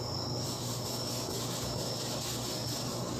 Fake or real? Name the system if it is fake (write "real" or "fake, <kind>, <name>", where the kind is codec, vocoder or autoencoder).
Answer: real